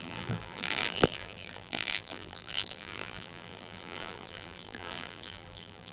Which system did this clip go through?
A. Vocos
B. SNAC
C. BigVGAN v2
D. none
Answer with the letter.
C